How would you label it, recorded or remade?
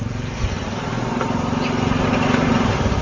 remade